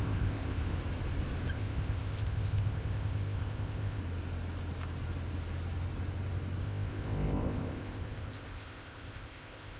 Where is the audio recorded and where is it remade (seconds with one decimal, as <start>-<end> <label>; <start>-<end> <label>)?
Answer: 0.0-0.7 remade; 0.7-1.5 recorded; 1.5-4.0 remade; 4.0-6.6 recorded; 6.6-9.8 remade